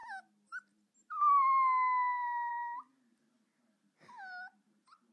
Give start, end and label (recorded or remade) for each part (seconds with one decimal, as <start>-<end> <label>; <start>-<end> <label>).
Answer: 0.0-5.1 recorded